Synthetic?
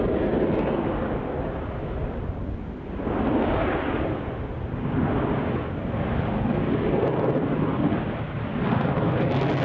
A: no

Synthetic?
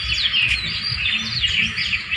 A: no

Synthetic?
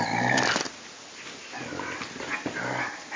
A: no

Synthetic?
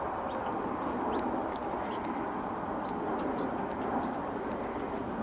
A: no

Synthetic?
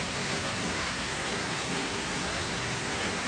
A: yes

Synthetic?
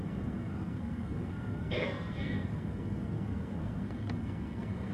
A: yes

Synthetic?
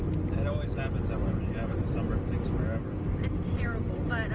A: no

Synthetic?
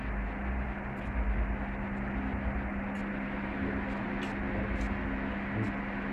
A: no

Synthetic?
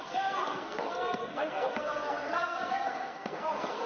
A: yes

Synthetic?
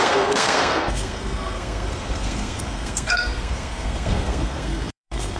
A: yes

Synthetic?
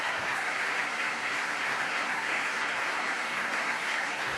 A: yes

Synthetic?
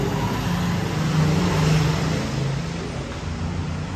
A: no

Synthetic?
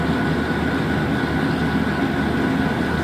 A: no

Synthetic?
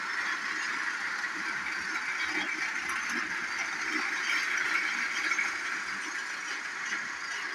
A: no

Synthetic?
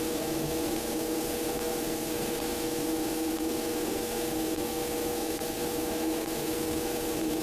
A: yes